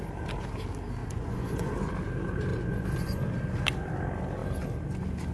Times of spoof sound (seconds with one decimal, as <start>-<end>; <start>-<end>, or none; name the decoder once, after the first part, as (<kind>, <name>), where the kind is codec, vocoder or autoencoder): 1.0-1.9 (vocoder, Vocos); 2.5-3.2